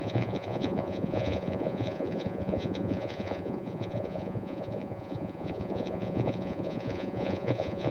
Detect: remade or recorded remade